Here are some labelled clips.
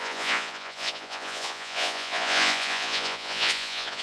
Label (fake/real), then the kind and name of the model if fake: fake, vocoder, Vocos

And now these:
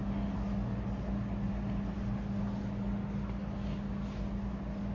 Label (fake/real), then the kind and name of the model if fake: real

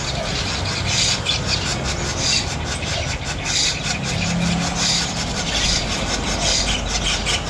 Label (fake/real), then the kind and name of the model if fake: real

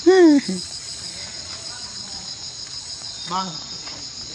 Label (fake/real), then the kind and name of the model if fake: fake, vocoder, Vocos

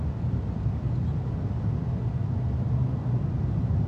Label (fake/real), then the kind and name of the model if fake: real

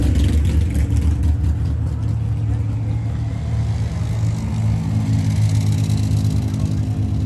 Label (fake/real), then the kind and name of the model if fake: real